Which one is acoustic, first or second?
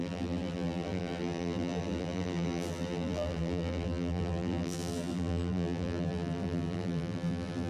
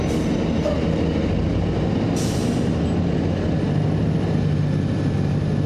second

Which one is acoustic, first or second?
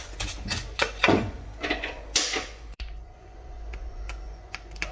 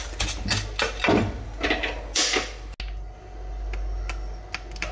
second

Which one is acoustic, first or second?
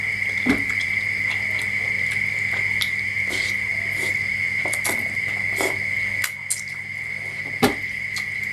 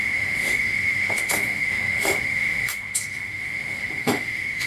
first